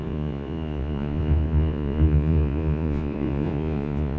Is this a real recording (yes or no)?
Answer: no